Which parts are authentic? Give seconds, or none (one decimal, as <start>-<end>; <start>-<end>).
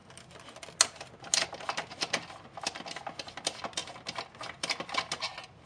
0.0-5.7